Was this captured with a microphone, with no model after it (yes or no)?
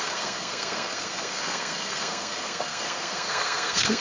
no